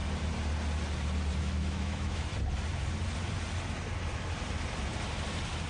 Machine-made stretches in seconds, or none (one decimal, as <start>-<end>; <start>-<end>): 1.4-2.3

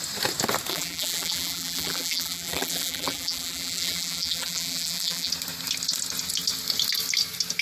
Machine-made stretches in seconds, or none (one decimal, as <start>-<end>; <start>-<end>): 0.7-5.3